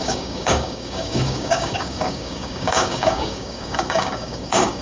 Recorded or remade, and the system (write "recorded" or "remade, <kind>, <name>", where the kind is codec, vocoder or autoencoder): remade, codec, DAC